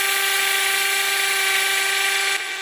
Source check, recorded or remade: recorded